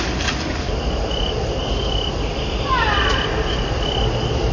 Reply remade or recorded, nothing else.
recorded